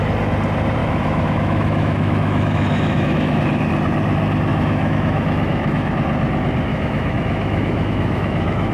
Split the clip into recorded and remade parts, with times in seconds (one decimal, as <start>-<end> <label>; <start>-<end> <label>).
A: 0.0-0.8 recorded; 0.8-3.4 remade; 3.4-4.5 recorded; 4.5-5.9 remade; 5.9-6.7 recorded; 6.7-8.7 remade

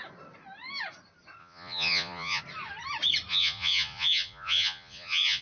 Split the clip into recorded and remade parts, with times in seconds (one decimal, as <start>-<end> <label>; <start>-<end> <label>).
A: 0.0-1.4 recorded; 1.4-2.4 remade; 2.4-3.3 recorded; 3.3-5.4 remade

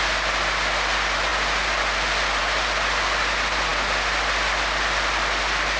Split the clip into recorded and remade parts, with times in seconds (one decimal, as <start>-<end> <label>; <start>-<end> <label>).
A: 0.0-5.8 recorded